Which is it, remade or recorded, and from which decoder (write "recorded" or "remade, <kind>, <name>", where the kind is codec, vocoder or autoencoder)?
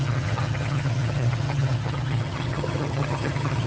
remade, vocoder, HiFi-GAN